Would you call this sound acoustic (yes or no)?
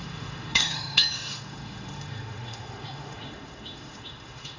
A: no